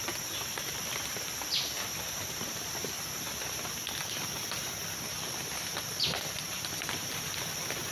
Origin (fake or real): real